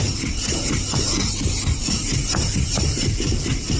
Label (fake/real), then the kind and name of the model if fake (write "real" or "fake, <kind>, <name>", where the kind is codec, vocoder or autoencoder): real